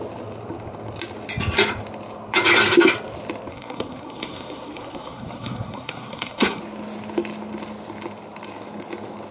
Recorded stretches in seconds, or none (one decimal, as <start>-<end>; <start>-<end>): 0.0-3.5; 6.6-9.3